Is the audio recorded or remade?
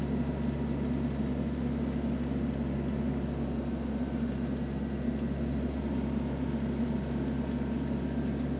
recorded